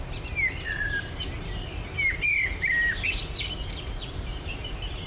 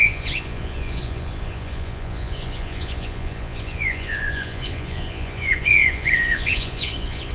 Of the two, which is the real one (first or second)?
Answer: first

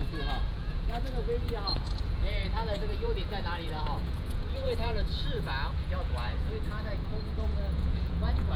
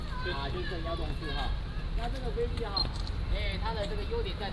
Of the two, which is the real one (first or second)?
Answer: second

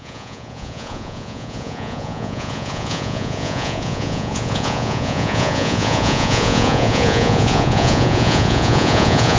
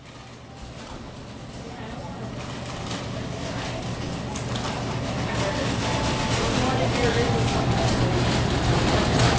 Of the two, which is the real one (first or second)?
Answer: second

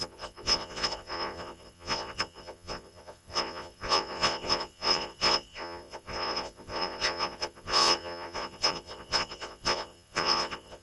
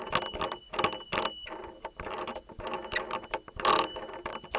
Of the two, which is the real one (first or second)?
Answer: second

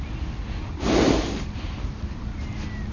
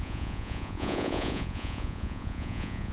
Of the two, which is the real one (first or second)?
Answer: first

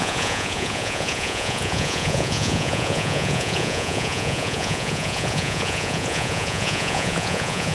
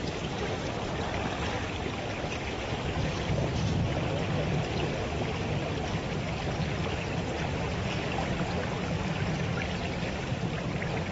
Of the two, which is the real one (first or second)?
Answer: second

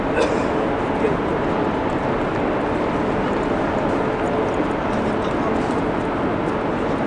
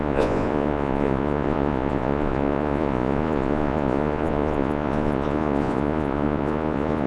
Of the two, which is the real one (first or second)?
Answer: first